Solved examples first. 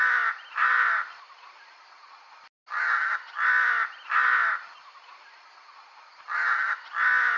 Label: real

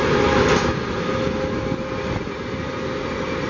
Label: real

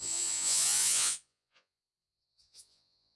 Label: fake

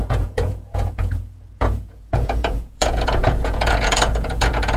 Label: fake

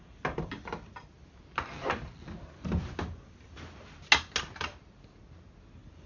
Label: real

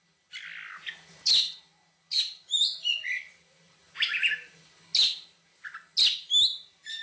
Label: real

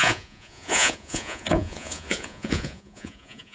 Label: fake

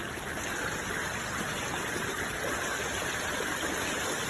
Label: real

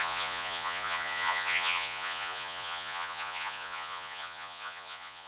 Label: fake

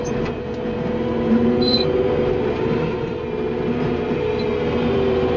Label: real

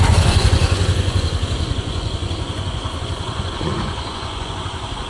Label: fake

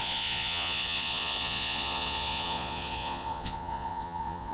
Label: fake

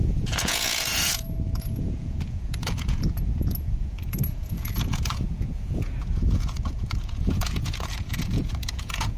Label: fake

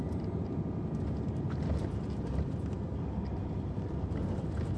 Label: real